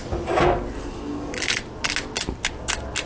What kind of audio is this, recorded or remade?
recorded